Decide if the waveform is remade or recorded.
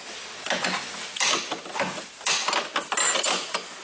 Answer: recorded